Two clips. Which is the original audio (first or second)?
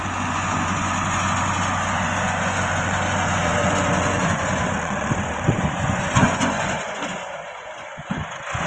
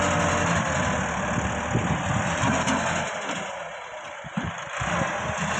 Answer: second